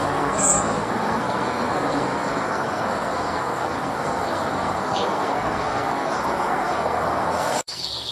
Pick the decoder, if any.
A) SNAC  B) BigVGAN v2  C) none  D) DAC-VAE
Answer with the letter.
A